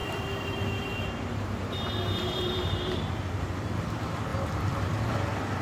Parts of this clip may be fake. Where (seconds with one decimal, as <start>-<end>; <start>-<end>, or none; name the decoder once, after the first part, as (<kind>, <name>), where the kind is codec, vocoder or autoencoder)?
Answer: 0.0-2.9 (vocoder, BigVGAN v2); 4.3-4.8